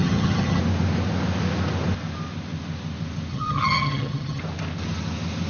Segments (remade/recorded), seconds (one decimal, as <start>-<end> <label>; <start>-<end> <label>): 0.0-0.6 remade; 0.6-3.3 recorded; 3.3-4.4 remade; 4.4-5.5 recorded